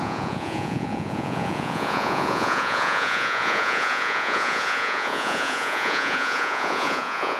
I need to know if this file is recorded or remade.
remade